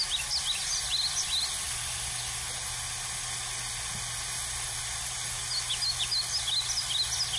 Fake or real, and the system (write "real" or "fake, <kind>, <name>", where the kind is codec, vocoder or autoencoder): real